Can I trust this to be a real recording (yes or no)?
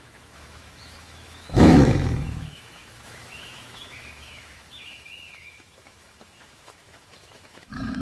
no